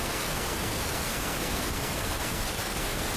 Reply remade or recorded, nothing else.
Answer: remade